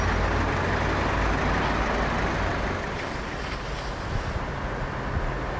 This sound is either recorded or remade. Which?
recorded